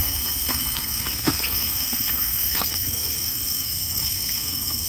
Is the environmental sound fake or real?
fake